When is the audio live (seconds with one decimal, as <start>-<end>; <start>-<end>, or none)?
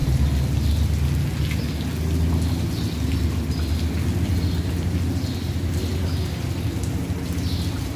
0.0-8.0